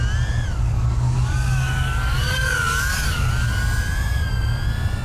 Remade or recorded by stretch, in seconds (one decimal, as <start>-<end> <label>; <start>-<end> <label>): 0.0-0.5 recorded; 0.5-3.5 remade; 3.5-5.0 recorded

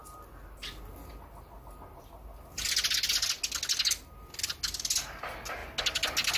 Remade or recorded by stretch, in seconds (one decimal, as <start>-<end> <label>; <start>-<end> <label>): 0.0-0.8 remade; 0.8-6.4 recorded